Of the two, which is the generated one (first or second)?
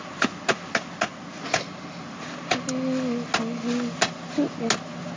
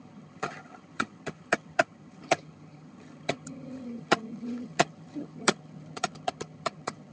second